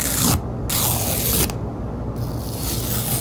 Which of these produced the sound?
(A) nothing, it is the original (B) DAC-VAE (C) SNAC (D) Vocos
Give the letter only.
A